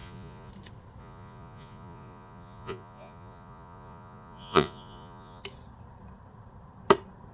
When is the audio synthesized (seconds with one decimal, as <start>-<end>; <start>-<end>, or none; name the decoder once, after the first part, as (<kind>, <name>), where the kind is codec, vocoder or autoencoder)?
0.0-0.5 (vocoder, Vocos); 1.0-5.4